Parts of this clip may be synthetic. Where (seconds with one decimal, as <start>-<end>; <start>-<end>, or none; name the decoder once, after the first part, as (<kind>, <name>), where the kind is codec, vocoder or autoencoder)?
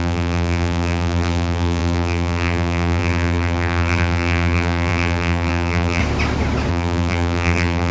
0.0-6.0 (vocoder, BigVGAN v2); 6.7-7.9